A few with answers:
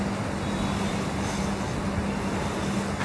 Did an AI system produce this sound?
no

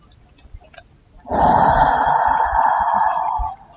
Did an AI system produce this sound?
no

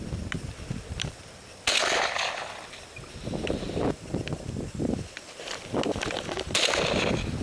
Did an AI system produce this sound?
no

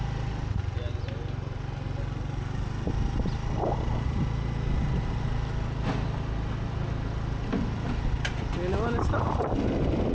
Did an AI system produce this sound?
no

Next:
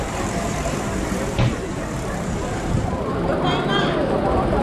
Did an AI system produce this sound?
yes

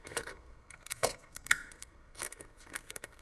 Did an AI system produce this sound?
yes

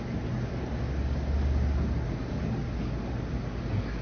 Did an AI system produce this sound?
no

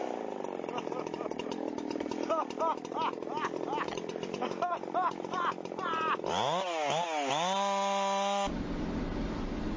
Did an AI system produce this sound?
no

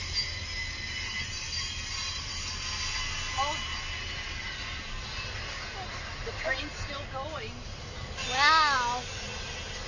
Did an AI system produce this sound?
no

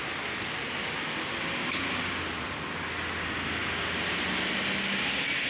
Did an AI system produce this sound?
no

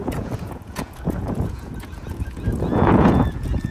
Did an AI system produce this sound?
yes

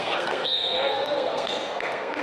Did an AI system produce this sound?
yes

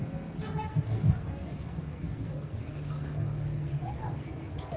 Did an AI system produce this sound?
yes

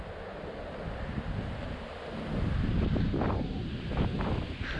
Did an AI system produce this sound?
no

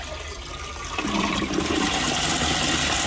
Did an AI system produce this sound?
no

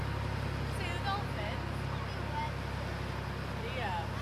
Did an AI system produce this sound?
no